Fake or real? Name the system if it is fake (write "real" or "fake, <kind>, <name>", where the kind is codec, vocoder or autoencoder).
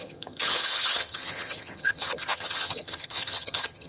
fake, vocoder, HiFi-GAN